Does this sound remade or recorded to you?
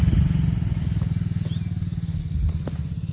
recorded